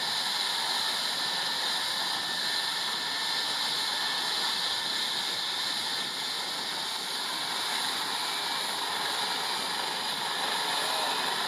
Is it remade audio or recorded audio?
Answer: recorded